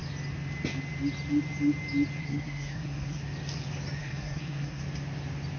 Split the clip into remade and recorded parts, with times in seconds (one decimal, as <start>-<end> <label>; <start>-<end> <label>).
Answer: 0.0-2.2 recorded; 2.2-3.2 remade; 3.2-4.0 recorded; 4.0-4.8 remade; 4.8-5.6 recorded